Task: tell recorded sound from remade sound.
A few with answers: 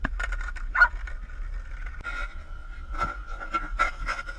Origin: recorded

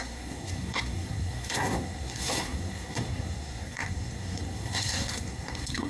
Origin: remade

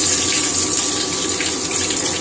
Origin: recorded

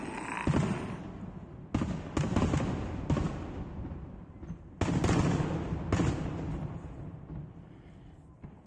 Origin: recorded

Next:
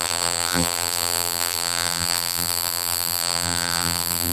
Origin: remade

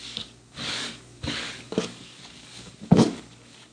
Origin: remade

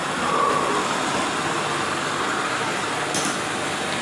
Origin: remade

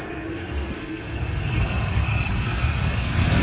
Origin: remade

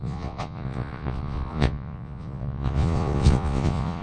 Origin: remade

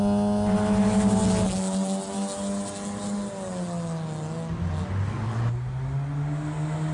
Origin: recorded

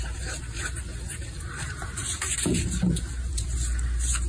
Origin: remade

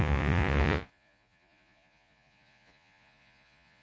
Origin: remade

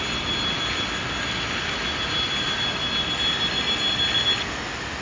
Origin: recorded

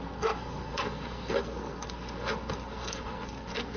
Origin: remade